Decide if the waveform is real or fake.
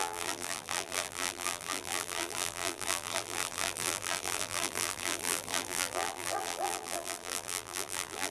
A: fake